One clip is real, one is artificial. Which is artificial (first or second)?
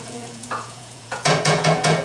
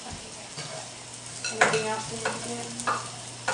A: first